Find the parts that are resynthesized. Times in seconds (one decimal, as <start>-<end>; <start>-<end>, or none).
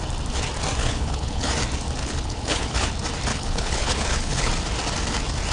0.8-1.5; 2.0-2.9; 3.3-4.5